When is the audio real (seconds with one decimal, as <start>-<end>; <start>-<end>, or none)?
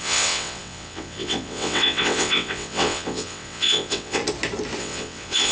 4.2-4.8